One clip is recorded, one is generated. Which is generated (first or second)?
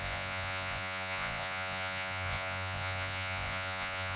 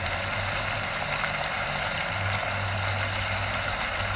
first